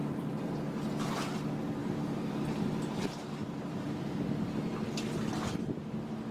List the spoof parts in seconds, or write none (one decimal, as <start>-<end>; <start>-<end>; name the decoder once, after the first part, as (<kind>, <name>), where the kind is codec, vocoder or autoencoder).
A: 1.8-2.4 (vocoder, BigVGAN v2); 2.9-4.2